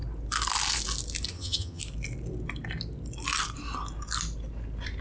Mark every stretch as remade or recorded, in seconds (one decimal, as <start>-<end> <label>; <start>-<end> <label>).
0.0-1.3 recorded; 1.3-1.8 remade; 1.8-5.0 recorded